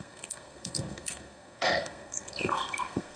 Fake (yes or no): yes